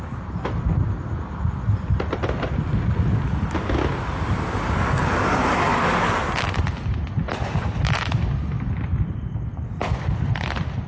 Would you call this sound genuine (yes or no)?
yes